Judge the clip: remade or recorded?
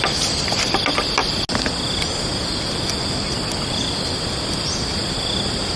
recorded